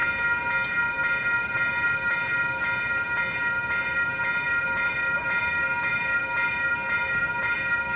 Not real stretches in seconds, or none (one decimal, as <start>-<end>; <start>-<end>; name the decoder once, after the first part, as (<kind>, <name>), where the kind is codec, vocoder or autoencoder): none